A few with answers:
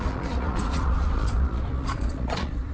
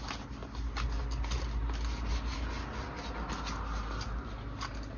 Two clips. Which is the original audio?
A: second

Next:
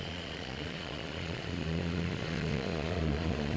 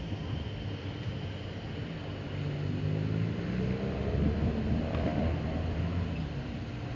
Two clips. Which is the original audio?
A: second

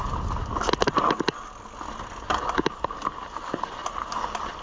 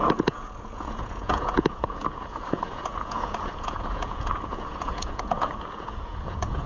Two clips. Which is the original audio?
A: first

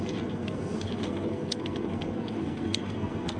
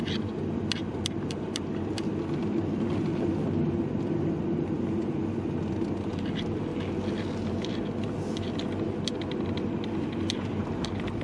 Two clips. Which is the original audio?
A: second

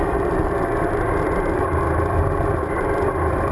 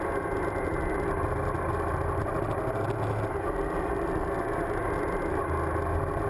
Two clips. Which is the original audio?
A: second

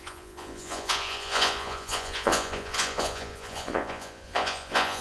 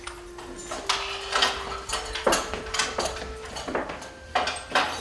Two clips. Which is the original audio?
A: second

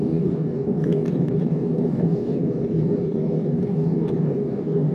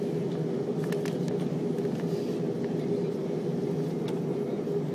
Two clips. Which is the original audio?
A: second